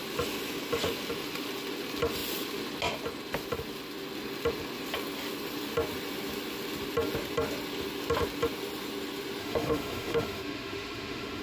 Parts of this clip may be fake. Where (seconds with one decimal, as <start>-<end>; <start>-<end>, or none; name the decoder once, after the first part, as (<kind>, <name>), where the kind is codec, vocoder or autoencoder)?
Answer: 9.4-11.4 (autoencoder, DAC-VAE)